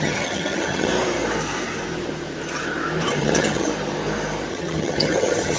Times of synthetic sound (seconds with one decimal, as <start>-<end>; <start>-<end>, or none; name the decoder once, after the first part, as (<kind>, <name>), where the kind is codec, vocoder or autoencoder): 0.0-0.9 (vocoder, HiFi-GAN); 3.2-3.7; 4.5-5.6

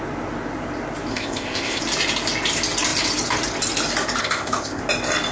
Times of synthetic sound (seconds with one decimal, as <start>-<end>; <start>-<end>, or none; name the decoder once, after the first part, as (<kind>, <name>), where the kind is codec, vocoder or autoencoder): 1.1-1.8 (codec, ZipCodec); 4.2-4.8

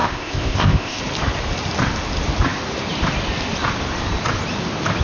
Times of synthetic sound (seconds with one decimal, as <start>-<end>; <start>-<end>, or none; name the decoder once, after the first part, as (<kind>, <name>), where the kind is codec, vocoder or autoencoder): 0.0-1.0 (codec, ZipCodec)

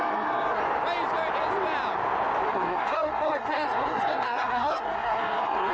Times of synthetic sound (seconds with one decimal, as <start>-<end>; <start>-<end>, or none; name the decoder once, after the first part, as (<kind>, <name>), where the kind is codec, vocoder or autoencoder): 0.0-0.6 (codec, SNAC); 2.5-5.7

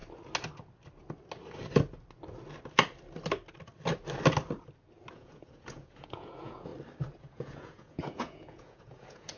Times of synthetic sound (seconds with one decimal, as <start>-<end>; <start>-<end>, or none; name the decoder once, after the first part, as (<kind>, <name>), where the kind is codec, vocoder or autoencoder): 5.1-6.7 (vocoder, Vocos); 7.2-9.4

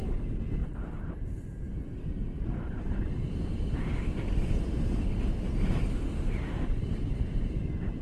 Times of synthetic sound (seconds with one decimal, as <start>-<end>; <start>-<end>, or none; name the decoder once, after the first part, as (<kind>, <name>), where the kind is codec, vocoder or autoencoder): 0.6-1.1 (vocoder, BigVGAN v2)